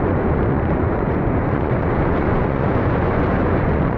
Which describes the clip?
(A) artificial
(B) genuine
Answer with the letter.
A